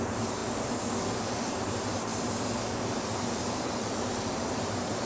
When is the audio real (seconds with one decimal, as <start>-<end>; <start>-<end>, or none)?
0.4-1.5; 2.1-3.4